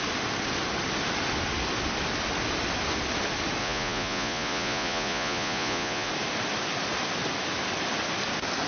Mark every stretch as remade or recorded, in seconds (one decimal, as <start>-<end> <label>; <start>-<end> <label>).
0.0-3.6 recorded; 3.6-6.1 remade; 6.1-8.7 recorded